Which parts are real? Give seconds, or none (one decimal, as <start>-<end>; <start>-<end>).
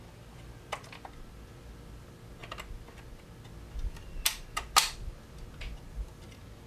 0.0-6.7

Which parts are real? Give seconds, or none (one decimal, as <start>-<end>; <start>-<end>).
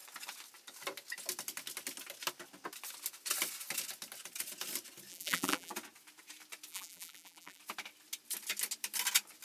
0.0-5.1; 5.7-6.7; 7.6-9.4